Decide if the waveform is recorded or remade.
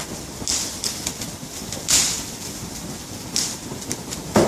recorded